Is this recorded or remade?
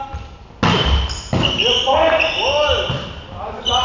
recorded